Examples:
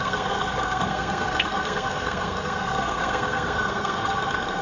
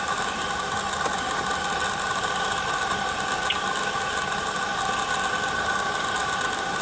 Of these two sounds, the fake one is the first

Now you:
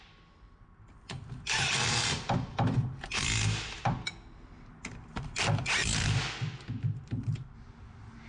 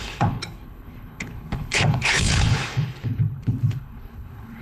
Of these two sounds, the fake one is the second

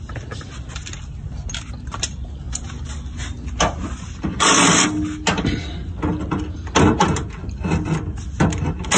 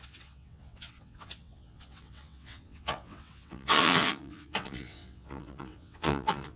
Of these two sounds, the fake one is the second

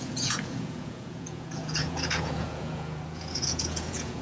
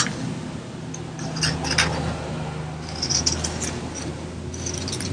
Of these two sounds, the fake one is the first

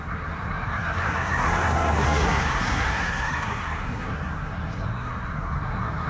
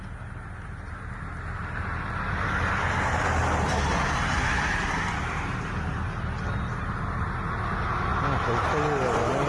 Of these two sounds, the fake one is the first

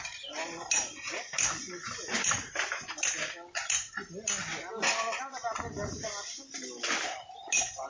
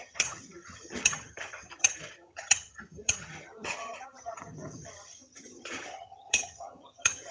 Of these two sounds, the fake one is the second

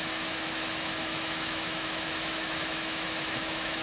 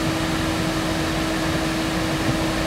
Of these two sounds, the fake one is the first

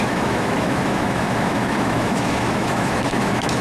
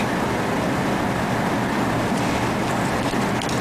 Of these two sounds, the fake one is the first